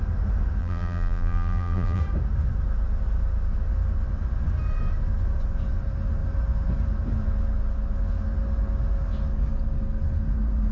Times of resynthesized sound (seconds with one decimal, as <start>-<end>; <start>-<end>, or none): 0.6-2.0